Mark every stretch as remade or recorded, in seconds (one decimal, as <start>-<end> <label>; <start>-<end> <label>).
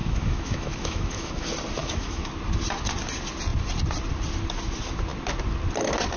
0.0-1.3 remade; 1.3-1.8 recorded; 1.8-2.3 remade; 2.3-6.2 recorded